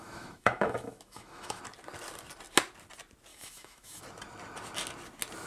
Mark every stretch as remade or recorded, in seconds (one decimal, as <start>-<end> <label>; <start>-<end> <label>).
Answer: 0.0-1.6 remade; 1.6-3.3 recorded; 3.3-4.0 remade; 4.0-5.5 recorded